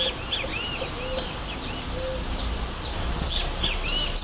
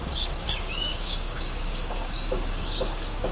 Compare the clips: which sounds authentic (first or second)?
first